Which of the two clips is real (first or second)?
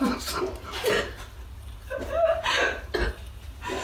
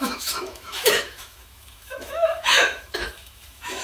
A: first